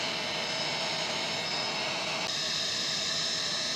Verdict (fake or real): real